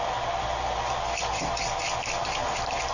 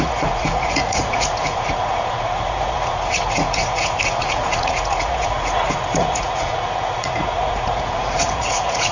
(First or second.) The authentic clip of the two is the first